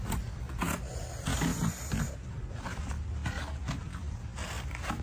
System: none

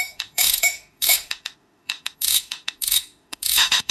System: autoencoder, DAC-VAE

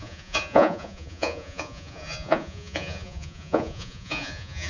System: vocoder, Vocos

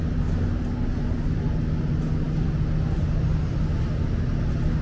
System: none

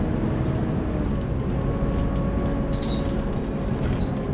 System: none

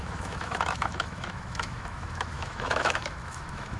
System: autoencoder, DAC-VAE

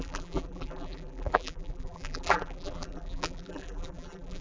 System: vocoder, BigVGAN v2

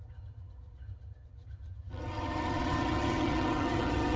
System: vocoder, HiFi-GAN